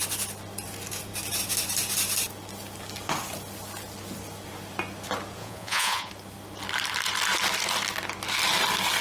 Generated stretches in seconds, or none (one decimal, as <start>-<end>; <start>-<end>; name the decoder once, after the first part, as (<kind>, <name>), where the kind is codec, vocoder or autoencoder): 5.4-6.1 (vocoder, Vocos)